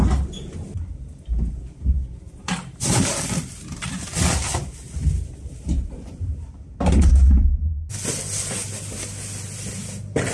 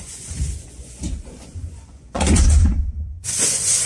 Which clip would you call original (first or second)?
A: first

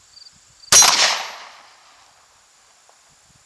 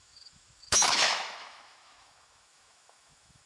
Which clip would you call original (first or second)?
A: first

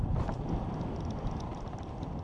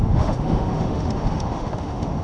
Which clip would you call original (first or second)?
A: first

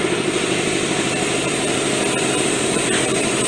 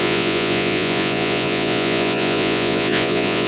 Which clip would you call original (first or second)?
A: first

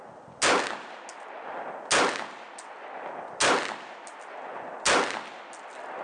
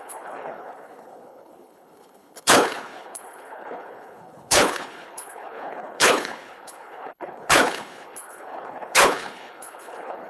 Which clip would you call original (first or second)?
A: first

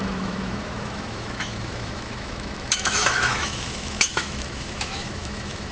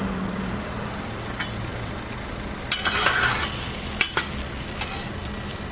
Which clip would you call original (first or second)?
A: second